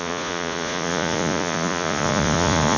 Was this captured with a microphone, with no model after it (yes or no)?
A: no